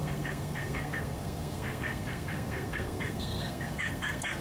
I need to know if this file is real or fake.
fake